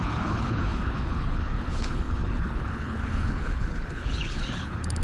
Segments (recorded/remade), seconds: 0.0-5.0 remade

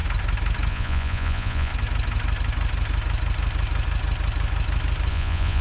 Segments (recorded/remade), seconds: 0.0-0.7 recorded; 0.7-1.7 remade; 1.7-5.1 recorded; 5.1-5.6 remade